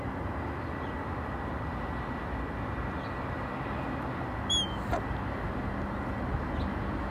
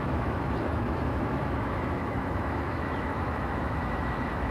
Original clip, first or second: first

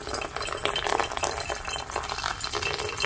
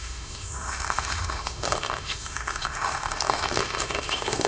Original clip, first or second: first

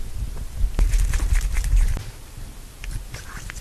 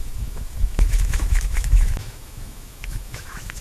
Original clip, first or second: first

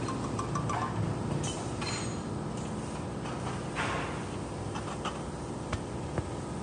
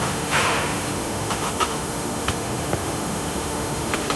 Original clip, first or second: first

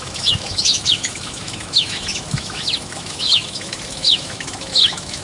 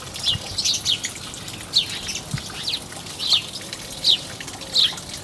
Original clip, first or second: second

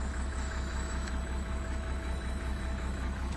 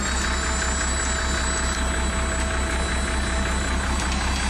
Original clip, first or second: second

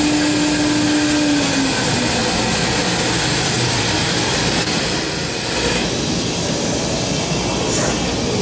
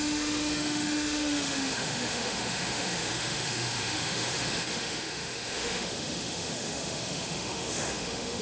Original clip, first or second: first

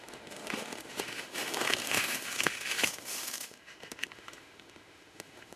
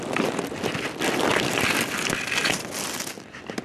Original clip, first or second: second